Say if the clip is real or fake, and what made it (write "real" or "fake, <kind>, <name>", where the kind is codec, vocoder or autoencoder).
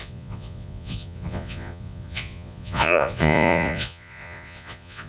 fake, vocoder, Vocos